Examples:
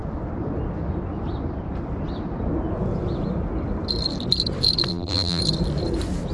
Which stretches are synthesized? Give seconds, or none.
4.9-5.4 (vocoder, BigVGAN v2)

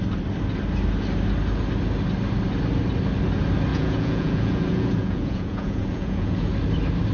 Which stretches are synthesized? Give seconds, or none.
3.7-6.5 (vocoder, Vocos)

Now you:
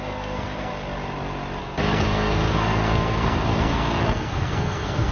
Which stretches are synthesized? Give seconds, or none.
0.0-0.7 (codec, SNAC); 1.6-5.1

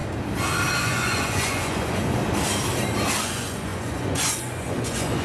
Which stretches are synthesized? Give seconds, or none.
0.8-2.2 (vocoder, Vocos); 3.2-5.2

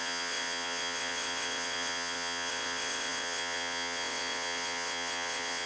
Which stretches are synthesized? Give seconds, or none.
0.0-5.7 (vocoder, WaveNeXt)

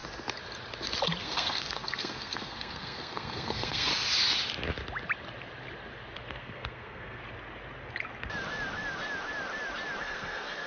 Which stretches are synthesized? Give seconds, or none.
1.2-3.9 (codec, SNAC); 6.3-7.2; 10.0-10.7

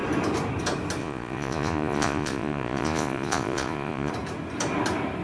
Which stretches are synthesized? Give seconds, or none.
1.0-4.1 (vocoder, Vocos)